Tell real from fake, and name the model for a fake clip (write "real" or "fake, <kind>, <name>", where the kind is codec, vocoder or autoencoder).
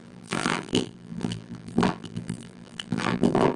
fake, vocoder, BigVGAN v2